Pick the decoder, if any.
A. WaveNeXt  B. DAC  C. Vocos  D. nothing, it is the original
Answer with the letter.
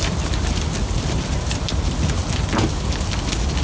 D